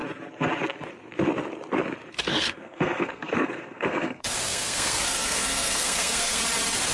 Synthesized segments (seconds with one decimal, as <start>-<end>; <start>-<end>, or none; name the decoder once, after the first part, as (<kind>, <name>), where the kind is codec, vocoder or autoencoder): 2.3-6.4 (codec, SNAC)